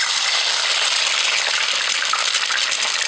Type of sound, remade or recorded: recorded